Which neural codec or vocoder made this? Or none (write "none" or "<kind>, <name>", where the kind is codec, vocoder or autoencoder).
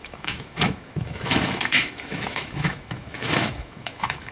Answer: autoencoder, DAC-VAE